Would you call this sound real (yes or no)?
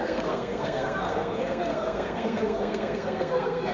no